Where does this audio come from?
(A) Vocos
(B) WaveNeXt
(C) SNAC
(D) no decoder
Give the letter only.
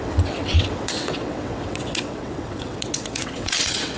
B